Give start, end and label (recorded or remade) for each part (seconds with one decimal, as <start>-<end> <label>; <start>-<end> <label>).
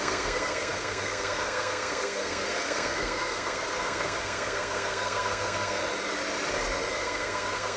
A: 0.0-5.8 remade; 5.8-6.9 recorded; 6.9-7.8 remade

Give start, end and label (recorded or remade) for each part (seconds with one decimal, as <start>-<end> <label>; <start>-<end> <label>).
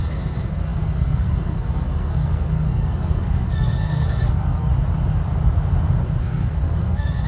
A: 0.0-4.7 remade; 4.7-6.2 recorded; 6.2-7.3 remade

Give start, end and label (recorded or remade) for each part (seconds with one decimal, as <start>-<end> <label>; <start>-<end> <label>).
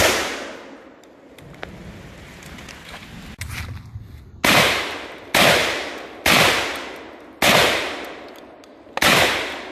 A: 0.0-9.7 recorded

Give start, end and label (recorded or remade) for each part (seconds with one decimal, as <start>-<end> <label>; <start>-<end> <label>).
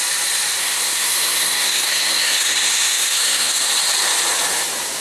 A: 0.0-0.6 recorded; 0.6-3.6 remade; 3.6-5.0 recorded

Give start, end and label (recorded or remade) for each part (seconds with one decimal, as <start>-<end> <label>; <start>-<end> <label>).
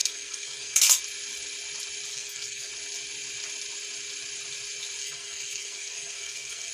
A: 0.0-1.0 remade; 1.0-2.1 recorded; 2.1-2.7 remade; 2.7-5.0 recorded; 5.0-6.7 remade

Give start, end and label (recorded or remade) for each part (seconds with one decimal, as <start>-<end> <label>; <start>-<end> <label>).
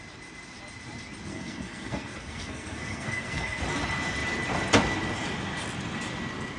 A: 0.0-1.3 recorded; 1.3-3.6 remade; 3.6-6.6 recorded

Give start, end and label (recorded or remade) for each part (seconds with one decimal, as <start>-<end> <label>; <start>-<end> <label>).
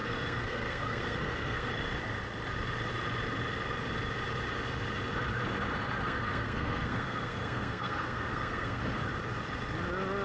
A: 0.0-1.7 remade; 1.7-6.0 recorded; 6.0-8.8 remade; 8.8-10.2 recorded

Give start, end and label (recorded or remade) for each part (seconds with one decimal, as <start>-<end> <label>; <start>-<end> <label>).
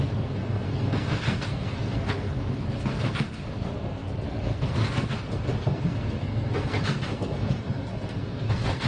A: 0.0-8.9 remade